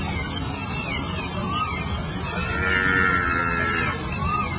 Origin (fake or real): real